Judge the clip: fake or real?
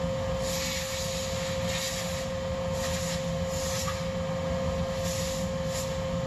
real